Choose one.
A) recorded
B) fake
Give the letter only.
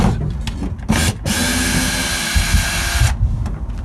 A